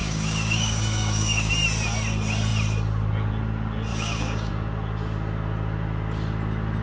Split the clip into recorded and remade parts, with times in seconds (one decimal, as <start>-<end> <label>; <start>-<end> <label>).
0.0-1.5 remade; 1.5-3.9 recorded; 3.9-4.5 remade; 4.5-6.8 recorded